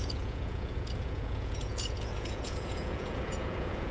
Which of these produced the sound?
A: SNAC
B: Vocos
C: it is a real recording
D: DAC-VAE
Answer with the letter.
B